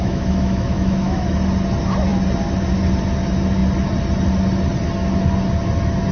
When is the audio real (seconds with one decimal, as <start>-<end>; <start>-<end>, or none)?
1.3-6.1